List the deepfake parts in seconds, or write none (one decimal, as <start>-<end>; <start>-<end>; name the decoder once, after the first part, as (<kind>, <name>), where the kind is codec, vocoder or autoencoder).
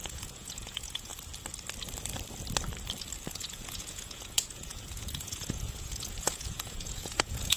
0.0-1.1 (vocoder, Vocos); 3.3-7.6